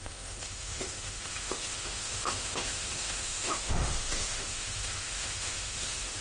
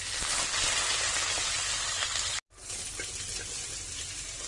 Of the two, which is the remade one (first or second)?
first